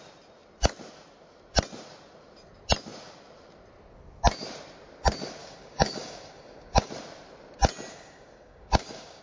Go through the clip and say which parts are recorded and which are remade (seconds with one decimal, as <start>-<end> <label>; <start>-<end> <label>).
0.0-5.4 recorded; 5.4-6.9 remade; 6.9-7.9 recorded; 7.9-9.2 remade